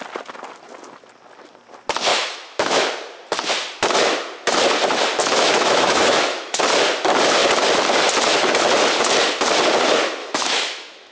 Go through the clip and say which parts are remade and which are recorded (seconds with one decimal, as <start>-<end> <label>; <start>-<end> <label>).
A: 0.0-2.1 recorded; 2.1-2.8 remade; 2.8-5.2 recorded; 5.2-6.6 remade; 6.6-10.2 recorded; 10.2-11.1 remade